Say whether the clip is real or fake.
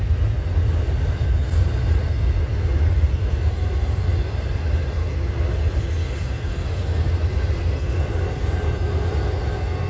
real